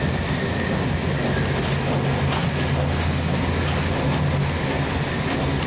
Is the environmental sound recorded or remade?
recorded